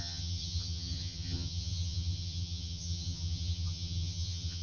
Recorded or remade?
remade